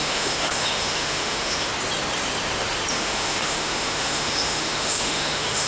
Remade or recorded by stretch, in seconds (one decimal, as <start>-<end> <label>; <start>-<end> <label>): 0.0-1.7 remade; 1.7-2.9 recorded; 2.9-5.7 remade

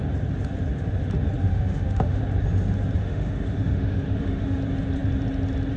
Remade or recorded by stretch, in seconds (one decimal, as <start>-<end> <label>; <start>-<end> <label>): 0.0-1.5 recorded; 1.5-2.2 remade; 2.2-3.0 recorded; 3.0-4.6 remade; 4.6-5.8 recorded

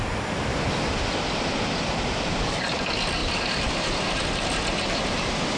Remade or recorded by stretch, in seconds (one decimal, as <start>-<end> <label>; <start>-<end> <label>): 0.0-3.2 recorded; 3.2-4.1 remade; 4.1-5.6 recorded

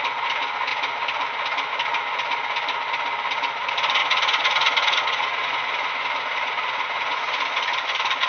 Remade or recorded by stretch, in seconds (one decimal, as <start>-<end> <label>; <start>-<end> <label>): 0.0-4.0 recorded; 4.0-7.4 remade; 7.4-8.3 recorded

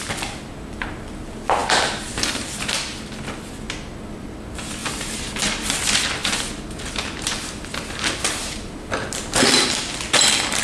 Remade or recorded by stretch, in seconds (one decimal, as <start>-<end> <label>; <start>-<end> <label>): 0.0-1.6 recorded; 1.6-3.0 remade; 3.0-4.8 recorded; 4.8-5.4 remade; 5.4-10.6 recorded

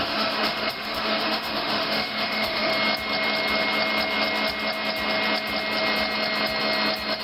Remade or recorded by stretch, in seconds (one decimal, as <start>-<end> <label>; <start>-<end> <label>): 0.0-2.7 remade; 2.7-7.2 recorded